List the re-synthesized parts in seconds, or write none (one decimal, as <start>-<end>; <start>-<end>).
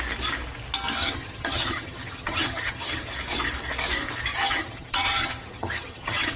1.0-3.1; 4.3-6.4